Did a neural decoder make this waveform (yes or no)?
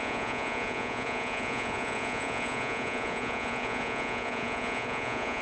yes